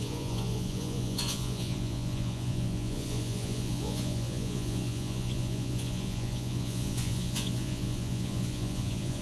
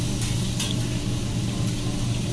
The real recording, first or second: second